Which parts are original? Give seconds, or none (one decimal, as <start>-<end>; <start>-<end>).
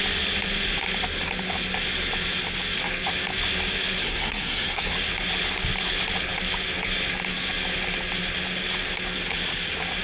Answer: 0.0-4.0; 4.9-10.0